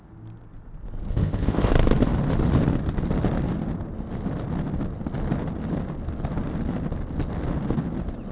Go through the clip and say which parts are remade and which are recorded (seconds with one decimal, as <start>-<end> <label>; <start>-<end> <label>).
0.0-1.1 recorded; 1.1-1.7 remade; 1.7-8.3 recorded